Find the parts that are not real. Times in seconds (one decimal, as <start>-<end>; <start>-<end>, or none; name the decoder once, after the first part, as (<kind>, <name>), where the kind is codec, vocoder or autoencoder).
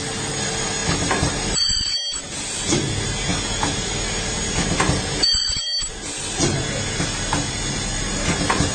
none